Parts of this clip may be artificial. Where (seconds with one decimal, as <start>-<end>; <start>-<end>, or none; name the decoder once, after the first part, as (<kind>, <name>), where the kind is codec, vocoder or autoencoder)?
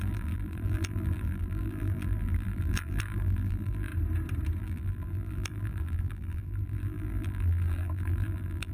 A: 0.0-3.9 (vocoder, BigVGAN v2); 4.6-8.7